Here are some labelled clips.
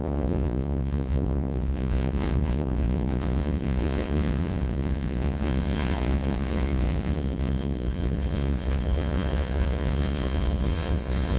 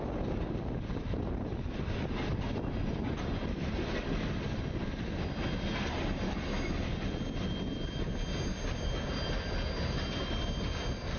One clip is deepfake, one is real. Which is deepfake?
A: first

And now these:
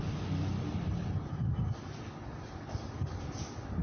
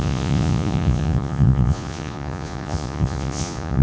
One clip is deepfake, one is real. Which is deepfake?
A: second